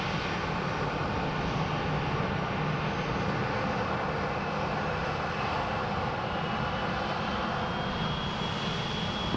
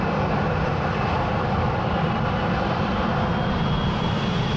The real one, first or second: first